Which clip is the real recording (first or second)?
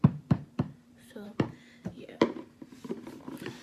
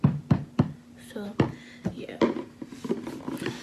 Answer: second